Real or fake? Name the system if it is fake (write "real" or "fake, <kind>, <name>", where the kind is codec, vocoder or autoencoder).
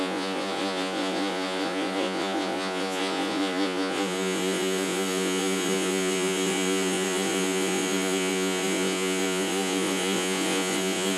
fake, vocoder, Vocos